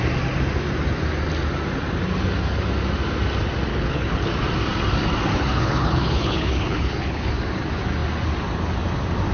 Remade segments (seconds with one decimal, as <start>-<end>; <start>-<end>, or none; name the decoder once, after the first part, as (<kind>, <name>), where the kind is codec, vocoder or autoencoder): 3.7-4.3 (codec, HILCodec); 5.3-7.3